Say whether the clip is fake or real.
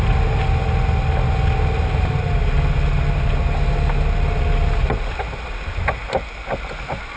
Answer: real